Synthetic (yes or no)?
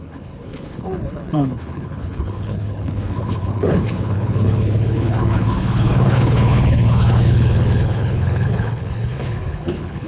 yes